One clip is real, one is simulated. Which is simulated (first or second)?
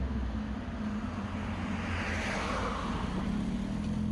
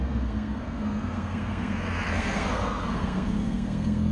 second